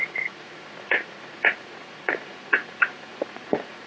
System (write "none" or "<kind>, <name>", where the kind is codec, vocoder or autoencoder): vocoder, Vocos